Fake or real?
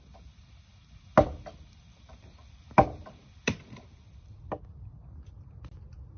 real